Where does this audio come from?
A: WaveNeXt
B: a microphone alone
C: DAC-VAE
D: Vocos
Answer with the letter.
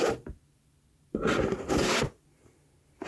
B